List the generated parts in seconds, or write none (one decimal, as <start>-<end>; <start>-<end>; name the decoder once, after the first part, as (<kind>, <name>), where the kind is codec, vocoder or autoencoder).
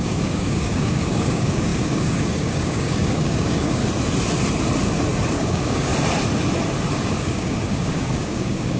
0.0-3.8 (codec, DAC); 5.3-5.9; 7.0-8.8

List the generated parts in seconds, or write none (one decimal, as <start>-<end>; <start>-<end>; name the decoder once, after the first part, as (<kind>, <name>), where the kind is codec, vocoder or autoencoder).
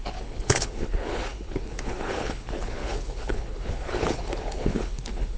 0.0-5.4 (codec, HILCodec)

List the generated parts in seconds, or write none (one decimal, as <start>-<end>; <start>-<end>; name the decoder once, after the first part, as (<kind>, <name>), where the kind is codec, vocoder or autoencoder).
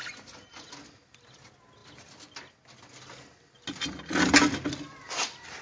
0.0-0.6 (vocoder, BigVGAN v2)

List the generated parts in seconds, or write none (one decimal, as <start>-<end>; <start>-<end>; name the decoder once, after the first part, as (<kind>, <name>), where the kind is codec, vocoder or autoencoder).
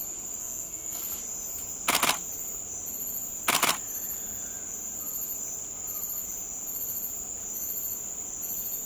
0.4-1.0 (codec, SNAC)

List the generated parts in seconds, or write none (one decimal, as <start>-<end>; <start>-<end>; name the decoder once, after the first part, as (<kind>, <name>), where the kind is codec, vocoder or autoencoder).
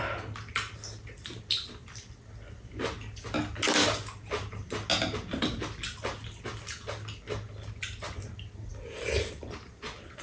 none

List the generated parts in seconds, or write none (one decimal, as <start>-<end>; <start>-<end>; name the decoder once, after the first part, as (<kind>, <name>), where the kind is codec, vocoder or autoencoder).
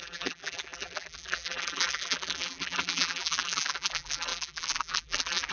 0.0-5.5 (vocoder, BigVGAN v2)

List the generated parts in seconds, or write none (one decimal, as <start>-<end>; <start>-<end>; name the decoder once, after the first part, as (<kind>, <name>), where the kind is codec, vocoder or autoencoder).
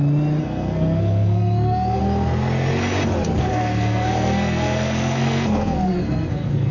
0.4-2.0 (codec, SNAC); 3.4-6.7